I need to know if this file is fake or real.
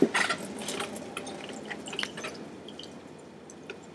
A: real